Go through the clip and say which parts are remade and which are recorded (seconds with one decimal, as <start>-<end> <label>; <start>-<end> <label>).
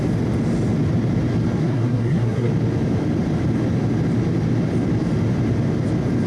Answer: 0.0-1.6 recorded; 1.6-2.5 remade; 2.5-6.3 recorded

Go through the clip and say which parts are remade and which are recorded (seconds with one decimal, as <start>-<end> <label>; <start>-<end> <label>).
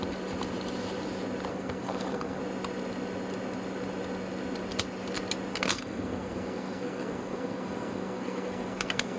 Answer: 0.0-1.5 recorded; 1.5-2.4 remade; 2.4-5.5 recorded; 5.5-9.2 remade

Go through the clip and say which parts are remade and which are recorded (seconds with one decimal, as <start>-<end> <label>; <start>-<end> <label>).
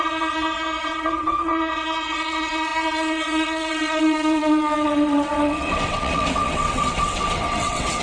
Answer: 0.0-8.0 remade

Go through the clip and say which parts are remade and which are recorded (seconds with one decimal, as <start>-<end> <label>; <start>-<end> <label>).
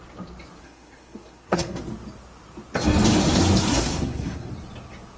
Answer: 0.0-0.6 recorded; 0.6-1.8 remade; 1.8-3.7 recorded; 3.7-4.5 remade; 4.5-5.2 recorded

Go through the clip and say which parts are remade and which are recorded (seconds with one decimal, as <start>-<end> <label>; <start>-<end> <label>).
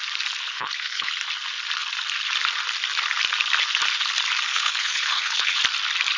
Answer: 0.0-0.4 recorded; 0.4-1.1 remade; 1.1-4.5 recorded; 4.5-5.6 remade; 5.6-6.2 recorded